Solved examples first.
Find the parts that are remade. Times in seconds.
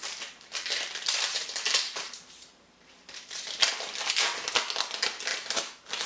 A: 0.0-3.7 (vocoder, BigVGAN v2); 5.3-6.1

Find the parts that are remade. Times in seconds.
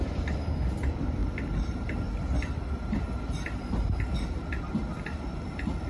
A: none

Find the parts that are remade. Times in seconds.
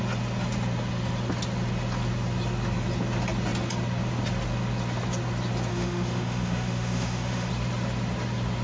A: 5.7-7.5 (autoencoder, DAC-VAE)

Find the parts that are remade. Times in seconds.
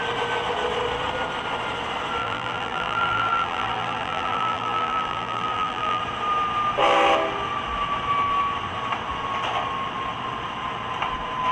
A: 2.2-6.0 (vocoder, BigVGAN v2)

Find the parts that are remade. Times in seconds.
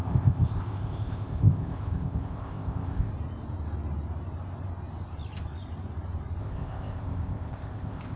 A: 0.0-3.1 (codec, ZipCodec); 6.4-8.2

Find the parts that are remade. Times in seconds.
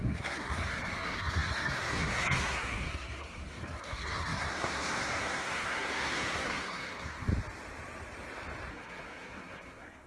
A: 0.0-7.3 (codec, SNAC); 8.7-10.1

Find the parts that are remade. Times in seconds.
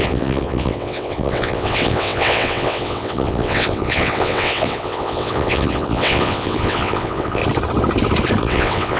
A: 0.0-7.4 (vocoder, WaveNeXt); 8.4-9.0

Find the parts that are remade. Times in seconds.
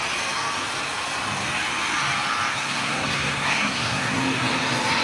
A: 2.5-4.2 (codec, SNAC)